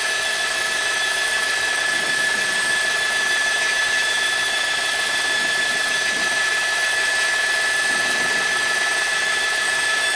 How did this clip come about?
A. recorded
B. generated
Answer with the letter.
B